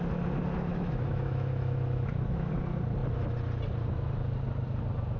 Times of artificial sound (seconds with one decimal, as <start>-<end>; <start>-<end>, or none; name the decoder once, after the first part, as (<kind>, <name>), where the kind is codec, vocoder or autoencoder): 0.7-2.5 (autoencoder, DAC-VAE)

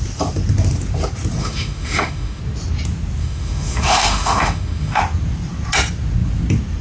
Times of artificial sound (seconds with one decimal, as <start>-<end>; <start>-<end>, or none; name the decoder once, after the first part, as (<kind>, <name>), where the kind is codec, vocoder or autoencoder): 1.4-2.4 (autoencoder, DAC-VAE); 3.2-5.0

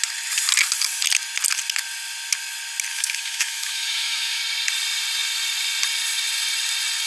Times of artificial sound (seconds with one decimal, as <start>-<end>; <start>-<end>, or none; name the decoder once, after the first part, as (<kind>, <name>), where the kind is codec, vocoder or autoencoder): 2.9-4.4 (autoencoder, DAC-VAE)

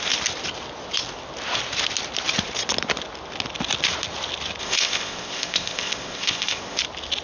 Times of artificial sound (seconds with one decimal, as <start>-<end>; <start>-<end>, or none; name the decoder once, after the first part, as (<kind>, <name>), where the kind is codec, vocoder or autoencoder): 4.6-6.8 (codec, ZipCodec)

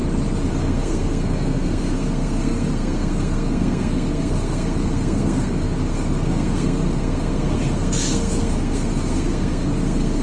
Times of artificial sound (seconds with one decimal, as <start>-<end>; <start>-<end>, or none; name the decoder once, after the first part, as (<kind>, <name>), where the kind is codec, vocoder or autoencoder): 0.6-10.2 (codec, SNAC)